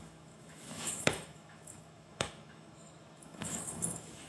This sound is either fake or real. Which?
fake